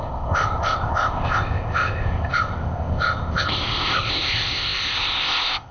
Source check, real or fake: fake